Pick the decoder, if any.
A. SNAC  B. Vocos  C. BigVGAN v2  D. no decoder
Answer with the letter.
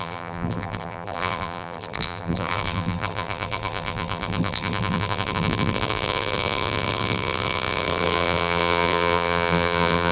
C